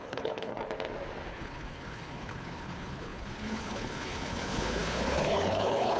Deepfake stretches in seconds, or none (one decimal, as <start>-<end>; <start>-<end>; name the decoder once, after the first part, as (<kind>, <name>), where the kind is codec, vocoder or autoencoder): 0.0-0.5 (codec, HILCodec); 1.3-6.0